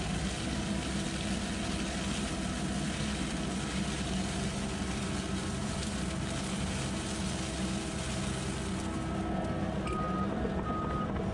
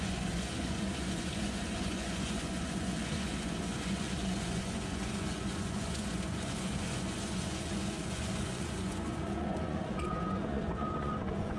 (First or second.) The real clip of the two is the first